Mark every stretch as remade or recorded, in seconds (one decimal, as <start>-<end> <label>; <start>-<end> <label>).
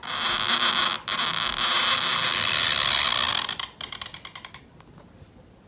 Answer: 0.0-5.7 recorded